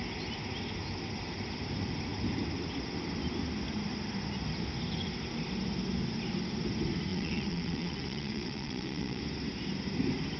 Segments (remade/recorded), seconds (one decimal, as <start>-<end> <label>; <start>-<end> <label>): 0.0-7.1 recorded; 7.1-9.2 remade; 9.2-10.4 recorded